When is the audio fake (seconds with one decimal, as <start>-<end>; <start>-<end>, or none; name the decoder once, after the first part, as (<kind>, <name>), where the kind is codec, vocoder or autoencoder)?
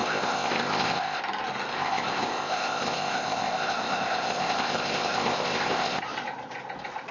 0.0-1.2 (codec, ZipCodec); 1.7-6.0